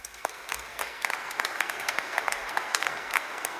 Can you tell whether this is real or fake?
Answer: fake